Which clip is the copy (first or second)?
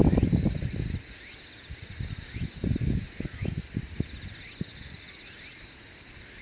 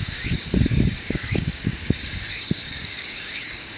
second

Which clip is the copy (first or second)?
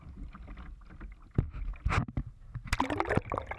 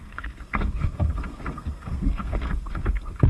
second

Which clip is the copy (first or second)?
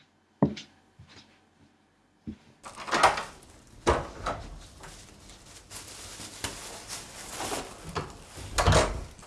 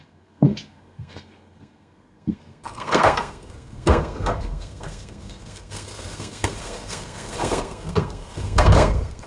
second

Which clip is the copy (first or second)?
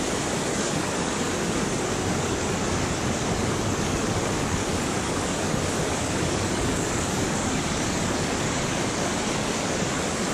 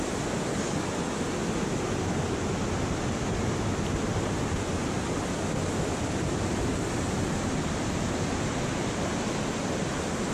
first